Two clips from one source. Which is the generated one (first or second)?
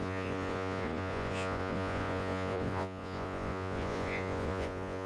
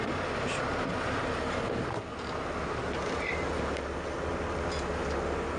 first